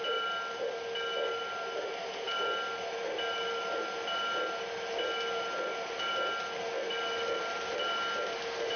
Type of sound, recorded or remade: recorded